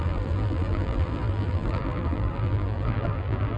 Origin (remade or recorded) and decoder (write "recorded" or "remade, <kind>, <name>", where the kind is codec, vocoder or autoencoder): remade, vocoder, BigVGAN v2